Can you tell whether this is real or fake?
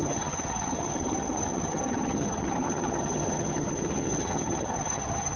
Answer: fake